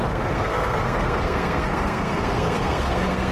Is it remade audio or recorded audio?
remade